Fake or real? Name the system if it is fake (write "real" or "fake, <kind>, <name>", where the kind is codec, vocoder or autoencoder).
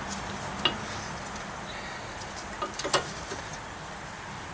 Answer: real